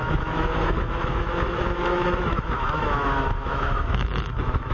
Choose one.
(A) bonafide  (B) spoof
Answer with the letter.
B